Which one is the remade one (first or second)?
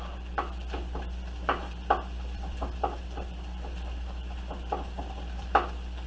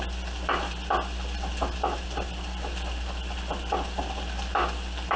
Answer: first